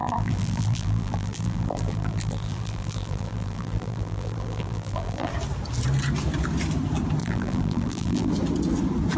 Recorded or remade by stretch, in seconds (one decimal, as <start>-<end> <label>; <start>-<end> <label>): 0.0-5.3 remade; 5.3-7.2 recorded; 7.2-8.3 remade; 8.3-9.2 recorded